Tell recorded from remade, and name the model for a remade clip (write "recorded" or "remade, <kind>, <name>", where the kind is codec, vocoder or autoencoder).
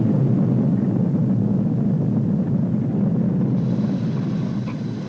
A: recorded